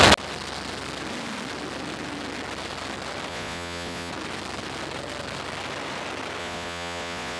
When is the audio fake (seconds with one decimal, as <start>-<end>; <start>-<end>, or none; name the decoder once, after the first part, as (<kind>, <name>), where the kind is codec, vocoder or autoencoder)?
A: 3.3-4.1 (vocoder, Vocos); 6.4-7.4